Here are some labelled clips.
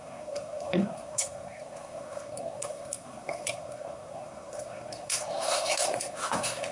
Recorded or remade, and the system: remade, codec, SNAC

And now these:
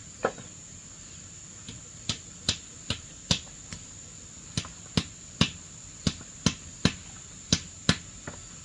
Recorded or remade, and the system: recorded